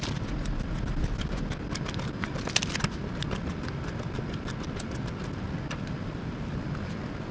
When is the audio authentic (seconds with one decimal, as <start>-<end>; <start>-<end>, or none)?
0.0-7.3